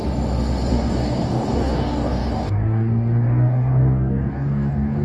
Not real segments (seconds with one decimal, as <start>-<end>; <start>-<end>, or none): 0.7-5.0